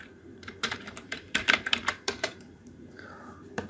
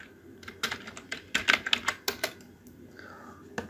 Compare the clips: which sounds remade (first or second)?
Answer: first